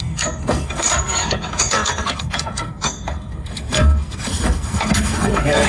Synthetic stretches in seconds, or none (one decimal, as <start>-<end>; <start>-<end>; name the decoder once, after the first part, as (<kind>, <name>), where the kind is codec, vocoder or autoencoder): 0.0-5.7 (codec, SNAC)

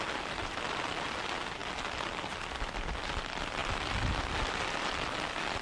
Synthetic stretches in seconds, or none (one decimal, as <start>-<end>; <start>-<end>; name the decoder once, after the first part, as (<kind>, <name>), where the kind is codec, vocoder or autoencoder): none